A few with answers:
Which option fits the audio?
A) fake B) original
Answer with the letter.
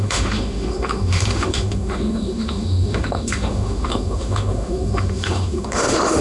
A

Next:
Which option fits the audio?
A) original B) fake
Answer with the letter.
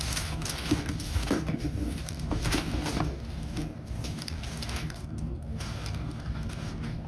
B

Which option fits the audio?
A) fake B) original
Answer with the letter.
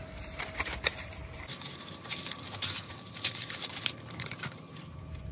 A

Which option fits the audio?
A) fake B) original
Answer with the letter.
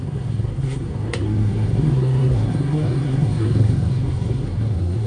A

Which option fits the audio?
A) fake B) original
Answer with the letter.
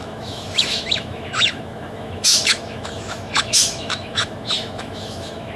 A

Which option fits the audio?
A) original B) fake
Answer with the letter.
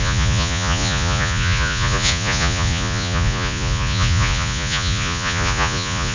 B